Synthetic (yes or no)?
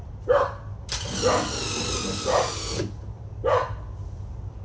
no